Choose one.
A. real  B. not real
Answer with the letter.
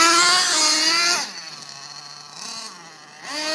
A